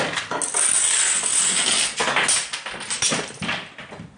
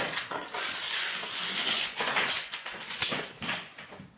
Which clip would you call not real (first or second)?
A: second